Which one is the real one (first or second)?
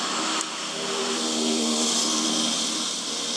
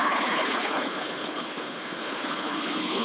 first